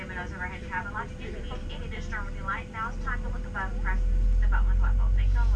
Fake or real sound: real